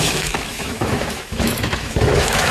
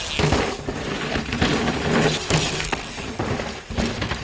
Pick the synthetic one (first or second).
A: first